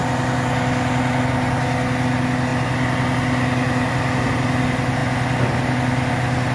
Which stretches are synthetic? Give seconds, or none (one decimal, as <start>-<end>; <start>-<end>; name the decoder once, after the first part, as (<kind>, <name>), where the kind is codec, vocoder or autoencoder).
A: none